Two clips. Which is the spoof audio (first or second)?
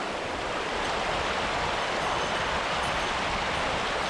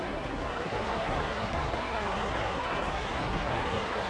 second